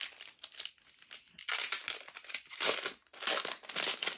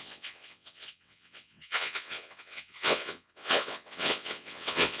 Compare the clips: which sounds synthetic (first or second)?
second